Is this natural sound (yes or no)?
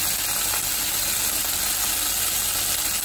yes